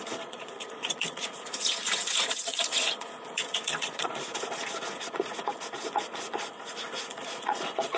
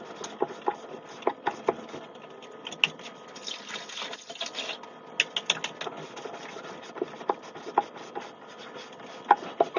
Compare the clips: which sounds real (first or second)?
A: second